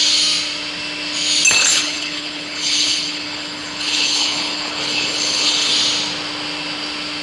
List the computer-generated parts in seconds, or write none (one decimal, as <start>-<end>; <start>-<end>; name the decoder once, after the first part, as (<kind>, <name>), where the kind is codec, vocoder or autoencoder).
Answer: 1.6-5.7 (codec, HILCodec)